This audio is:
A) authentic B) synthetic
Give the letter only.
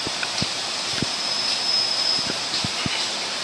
B